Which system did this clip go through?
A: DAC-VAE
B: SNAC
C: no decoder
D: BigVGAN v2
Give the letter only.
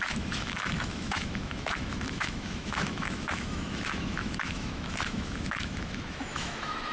A